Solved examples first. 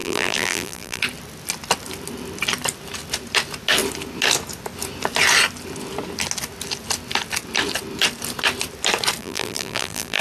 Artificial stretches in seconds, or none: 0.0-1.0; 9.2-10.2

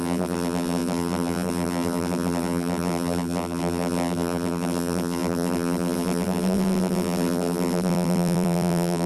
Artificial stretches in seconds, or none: 0.0-9.1

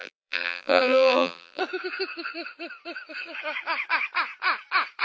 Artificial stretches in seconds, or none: 0.0-1.6

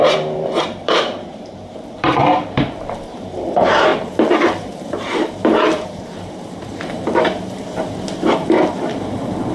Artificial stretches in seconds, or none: 0.0-9.5